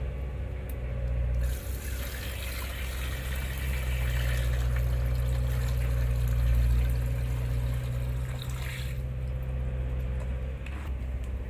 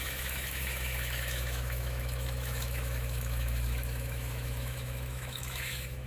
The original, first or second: first